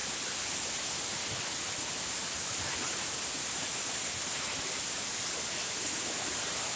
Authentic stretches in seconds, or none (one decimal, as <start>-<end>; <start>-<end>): 0.0-6.8